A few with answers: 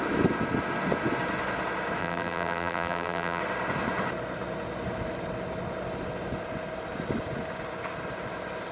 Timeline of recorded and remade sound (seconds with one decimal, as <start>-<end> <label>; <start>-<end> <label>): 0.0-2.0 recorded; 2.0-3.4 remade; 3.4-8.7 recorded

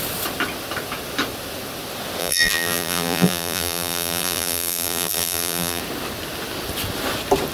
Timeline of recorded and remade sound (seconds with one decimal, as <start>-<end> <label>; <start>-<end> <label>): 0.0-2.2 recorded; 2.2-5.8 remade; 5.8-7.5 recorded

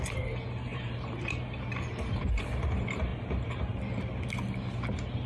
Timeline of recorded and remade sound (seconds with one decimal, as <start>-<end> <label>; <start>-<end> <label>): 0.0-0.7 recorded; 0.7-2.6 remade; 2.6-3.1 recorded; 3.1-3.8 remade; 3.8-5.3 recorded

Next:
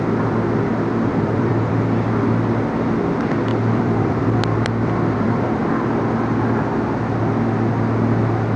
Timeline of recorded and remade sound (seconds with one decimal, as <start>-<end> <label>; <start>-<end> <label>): 0.0-1.1 recorded; 1.1-1.7 remade; 1.7-3.5 recorded; 3.5-5.6 remade; 5.6-8.6 recorded